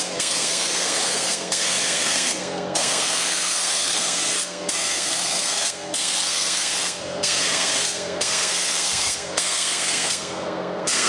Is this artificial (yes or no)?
yes